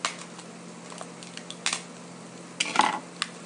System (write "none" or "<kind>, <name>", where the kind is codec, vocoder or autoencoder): none